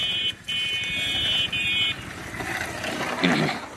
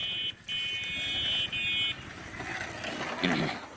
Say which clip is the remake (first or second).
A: first